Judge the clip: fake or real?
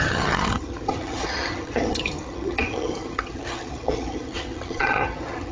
fake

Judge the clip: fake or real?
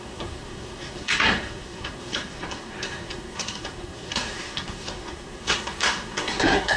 fake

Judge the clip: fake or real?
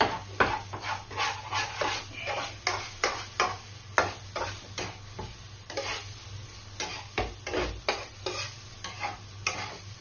real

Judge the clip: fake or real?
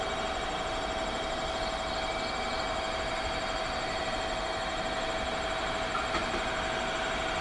real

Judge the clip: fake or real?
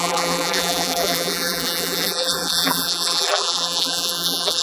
fake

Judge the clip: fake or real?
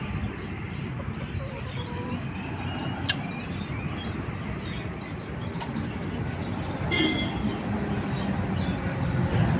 real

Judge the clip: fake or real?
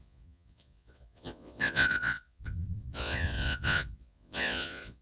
fake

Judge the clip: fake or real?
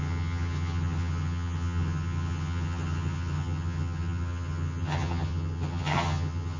fake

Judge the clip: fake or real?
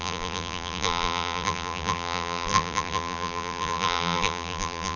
fake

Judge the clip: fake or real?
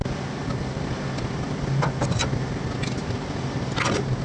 real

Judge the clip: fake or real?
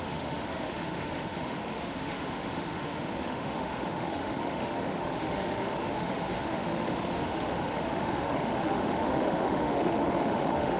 fake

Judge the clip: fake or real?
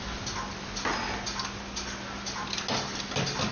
real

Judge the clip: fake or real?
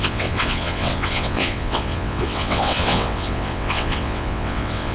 fake